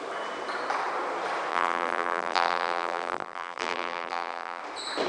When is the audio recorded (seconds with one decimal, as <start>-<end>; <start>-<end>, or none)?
0.0-1.5; 4.6-5.1